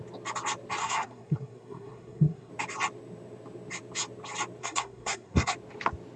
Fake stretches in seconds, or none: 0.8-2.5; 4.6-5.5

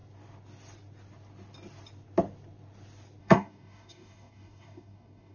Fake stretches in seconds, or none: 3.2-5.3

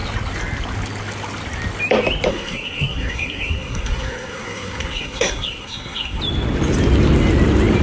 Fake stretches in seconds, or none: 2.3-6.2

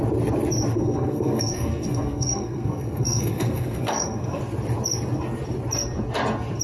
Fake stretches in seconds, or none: 0.7-4.4